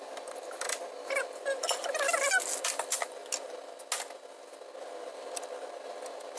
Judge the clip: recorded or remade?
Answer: recorded